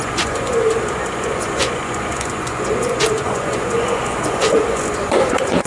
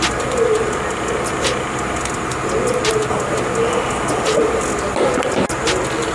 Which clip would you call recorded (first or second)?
second